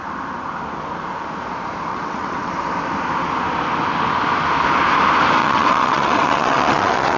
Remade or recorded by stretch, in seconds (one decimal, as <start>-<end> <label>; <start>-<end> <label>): 0.0-1.9 recorded; 1.9-2.5 remade; 2.5-5.4 recorded; 5.4-7.2 remade